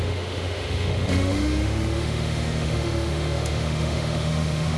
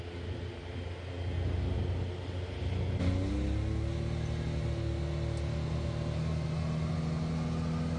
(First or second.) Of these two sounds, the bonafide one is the second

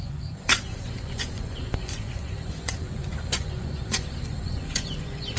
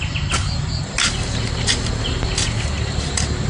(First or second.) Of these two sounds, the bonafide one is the second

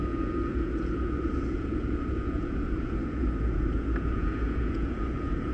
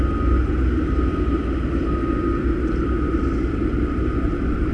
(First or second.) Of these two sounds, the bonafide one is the second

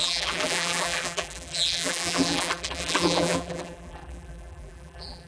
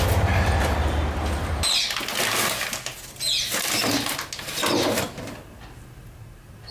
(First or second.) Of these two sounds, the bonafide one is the second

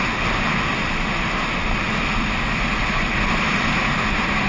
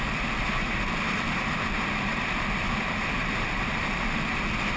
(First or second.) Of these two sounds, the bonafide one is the first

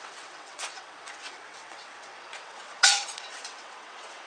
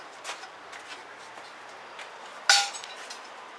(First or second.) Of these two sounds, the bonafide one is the second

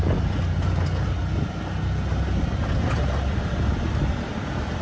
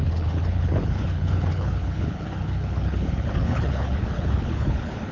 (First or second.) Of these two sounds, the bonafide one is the first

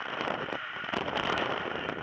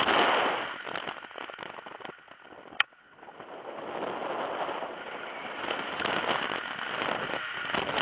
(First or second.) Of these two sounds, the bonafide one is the second